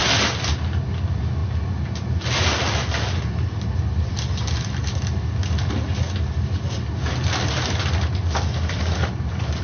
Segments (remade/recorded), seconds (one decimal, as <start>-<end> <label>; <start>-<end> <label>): 0.0-9.6 recorded